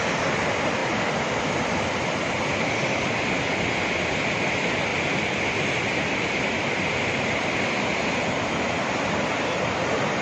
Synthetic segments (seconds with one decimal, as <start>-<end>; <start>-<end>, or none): none